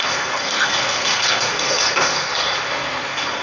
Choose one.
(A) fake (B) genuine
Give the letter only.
A